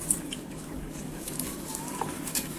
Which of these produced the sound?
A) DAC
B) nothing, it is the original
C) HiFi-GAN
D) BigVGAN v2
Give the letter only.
A